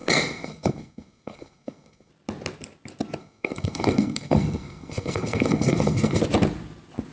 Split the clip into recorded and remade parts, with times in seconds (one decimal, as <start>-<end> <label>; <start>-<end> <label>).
0.0-2.1 remade; 2.1-3.2 recorded; 3.2-6.2 remade; 6.2-7.1 recorded